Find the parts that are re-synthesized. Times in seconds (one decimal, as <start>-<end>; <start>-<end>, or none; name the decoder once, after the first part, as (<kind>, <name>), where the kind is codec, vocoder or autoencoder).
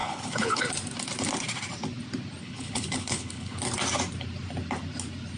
0.0-0.7 (codec, HILCodec); 2.4-3.6